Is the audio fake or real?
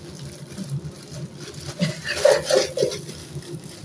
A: real